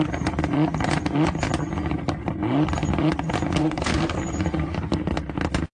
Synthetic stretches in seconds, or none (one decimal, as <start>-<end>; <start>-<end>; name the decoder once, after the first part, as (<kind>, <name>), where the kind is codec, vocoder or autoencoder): 3.6-4.2 (codec, SNAC)